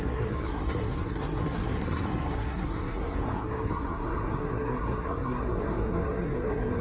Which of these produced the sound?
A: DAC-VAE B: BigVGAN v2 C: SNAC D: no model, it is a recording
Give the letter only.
C